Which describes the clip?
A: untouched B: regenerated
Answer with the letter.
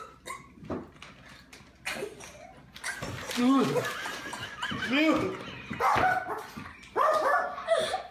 A